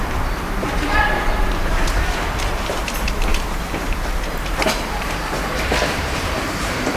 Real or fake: fake